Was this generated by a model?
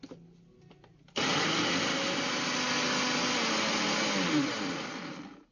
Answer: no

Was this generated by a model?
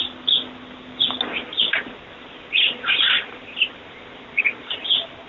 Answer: no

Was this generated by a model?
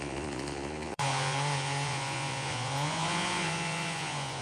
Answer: yes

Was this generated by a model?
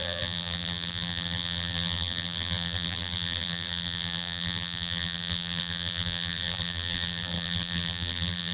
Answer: yes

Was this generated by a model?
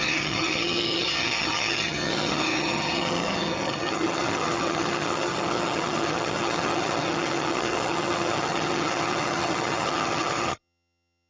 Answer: yes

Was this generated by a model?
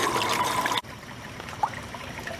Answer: no